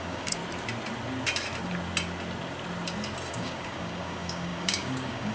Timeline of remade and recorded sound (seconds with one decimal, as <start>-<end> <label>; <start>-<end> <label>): 0.0-0.4 remade; 0.4-3.3 recorded; 3.3-5.3 remade